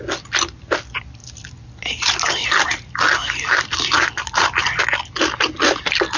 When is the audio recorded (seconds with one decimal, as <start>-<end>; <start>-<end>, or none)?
0.0-1.2; 4.8-6.2